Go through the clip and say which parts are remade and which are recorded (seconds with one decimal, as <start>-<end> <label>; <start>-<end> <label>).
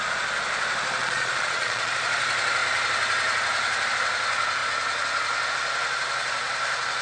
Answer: 0.0-1.0 recorded; 1.0-1.9 remade; 1.9-7.0 recorded